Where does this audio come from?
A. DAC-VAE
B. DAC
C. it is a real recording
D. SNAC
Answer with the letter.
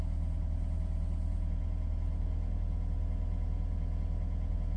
C